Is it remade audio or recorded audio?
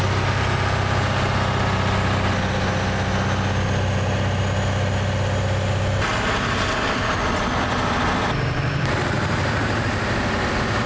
recorded